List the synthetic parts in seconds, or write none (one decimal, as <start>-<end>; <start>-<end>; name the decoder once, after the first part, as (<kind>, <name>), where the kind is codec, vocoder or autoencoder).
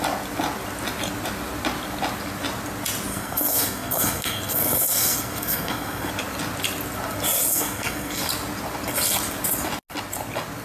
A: 3.1-6.1 (codec, SNAC); 7.5-8.2